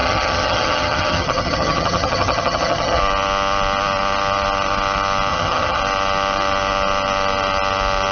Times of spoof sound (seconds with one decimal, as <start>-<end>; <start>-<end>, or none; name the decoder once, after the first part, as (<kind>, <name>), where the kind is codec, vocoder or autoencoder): 0.0-3.0 (vocoder, HiFi-GAN); 5.3-5.8